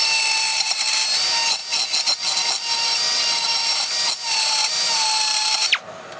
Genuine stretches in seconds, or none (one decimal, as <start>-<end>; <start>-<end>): 0.0-6.2